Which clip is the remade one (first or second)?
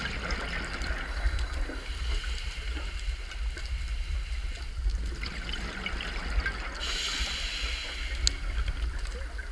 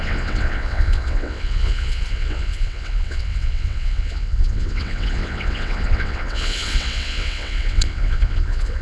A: second